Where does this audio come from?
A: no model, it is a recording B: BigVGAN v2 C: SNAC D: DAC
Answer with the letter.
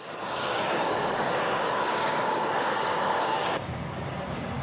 D